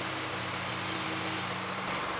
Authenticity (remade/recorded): recorded